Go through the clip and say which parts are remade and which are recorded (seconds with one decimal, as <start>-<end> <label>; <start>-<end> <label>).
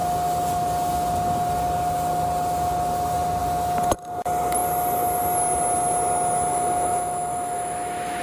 0.0-6.5 recorded; 6.5-8.2 remade